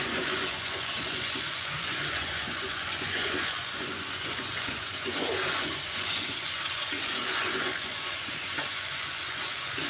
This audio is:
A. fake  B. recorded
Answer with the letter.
A